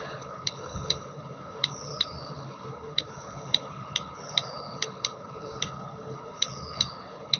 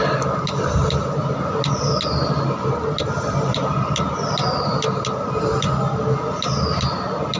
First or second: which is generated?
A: first